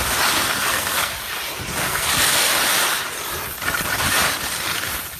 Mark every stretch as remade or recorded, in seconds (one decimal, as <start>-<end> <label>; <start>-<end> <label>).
0.0-0.4 recorded; 0.4-1.2 remade; 1.2-1.8 recorded; 1.8-2.5 remade; 2.5-5.2 recorded